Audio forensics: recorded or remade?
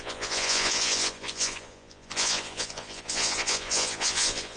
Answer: remade